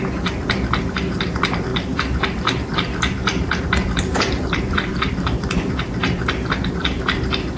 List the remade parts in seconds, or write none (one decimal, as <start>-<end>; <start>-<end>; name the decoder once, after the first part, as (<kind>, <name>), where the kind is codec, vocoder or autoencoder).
none